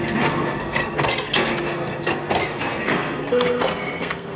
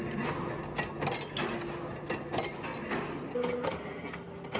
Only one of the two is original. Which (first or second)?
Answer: second